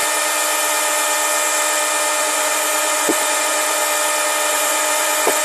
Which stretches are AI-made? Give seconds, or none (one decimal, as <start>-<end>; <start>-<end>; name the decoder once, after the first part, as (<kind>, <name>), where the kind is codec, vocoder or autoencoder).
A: 2.2-3.8 (vocoder, Vocos); 4.5-5.4